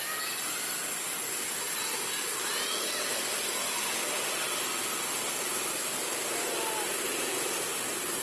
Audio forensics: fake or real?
real